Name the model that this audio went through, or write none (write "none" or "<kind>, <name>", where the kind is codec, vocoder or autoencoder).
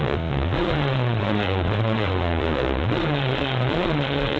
vocoder, Vocos